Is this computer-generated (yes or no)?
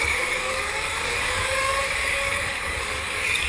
yes